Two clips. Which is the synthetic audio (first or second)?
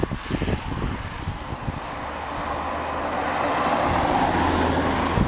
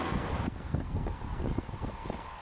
second